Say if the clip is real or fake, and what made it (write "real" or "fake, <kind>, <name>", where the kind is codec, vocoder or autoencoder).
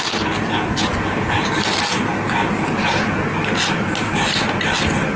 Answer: real